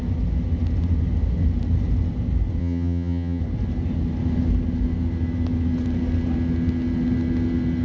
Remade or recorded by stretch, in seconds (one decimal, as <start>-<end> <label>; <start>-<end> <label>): 0.0-2.6 recorded; 2.6-3.4 remade; 3.4-7.8 recorded